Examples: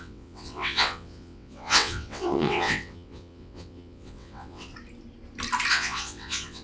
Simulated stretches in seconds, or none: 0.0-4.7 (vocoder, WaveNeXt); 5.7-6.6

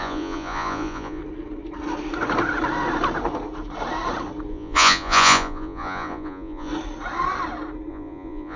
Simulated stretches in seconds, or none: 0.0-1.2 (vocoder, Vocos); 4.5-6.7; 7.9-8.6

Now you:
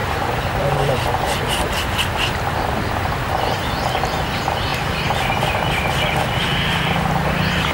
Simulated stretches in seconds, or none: 0.0-7.7 (vocoder, BigVGAN v2)

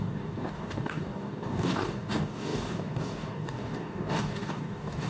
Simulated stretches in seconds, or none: 0.0-5.1 (codec, DAC)